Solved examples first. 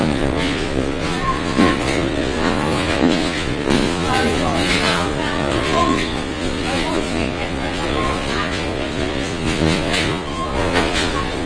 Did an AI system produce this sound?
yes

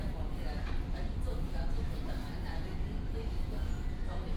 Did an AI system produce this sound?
no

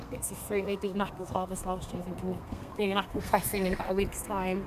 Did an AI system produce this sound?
yes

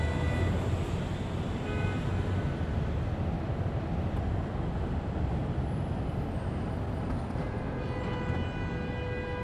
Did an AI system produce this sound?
no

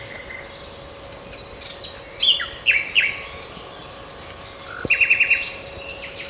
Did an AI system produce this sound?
no